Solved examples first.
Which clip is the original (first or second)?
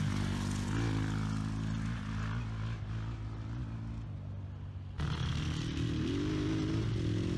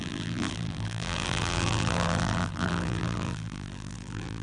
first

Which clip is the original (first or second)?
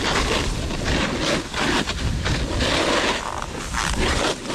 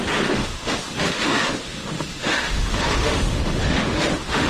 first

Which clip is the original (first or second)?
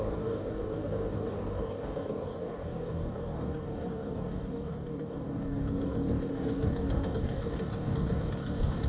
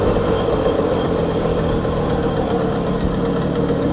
second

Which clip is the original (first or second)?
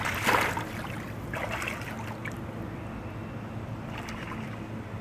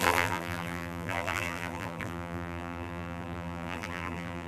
first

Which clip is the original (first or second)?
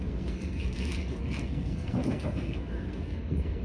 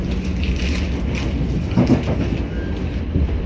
second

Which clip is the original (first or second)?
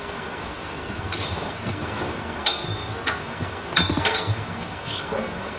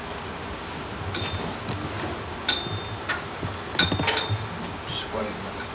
second